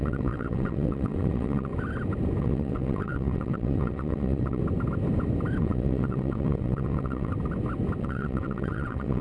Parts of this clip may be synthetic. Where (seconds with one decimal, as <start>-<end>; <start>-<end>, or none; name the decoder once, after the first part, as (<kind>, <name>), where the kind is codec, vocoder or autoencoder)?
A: 0.0-1.7 (vocoder, WaveNeXt); 2.4-4.6; 5.6-7.3; 8.0-9.2